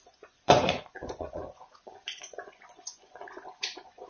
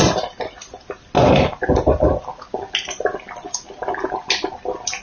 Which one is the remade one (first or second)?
first